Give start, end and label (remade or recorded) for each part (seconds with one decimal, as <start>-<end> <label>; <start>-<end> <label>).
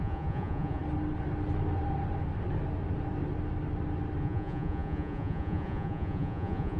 0.0-0.8 remade; 0.8-4.2 recorded; 4.2-6.8 remade